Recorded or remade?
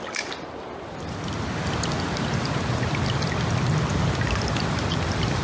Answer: recorded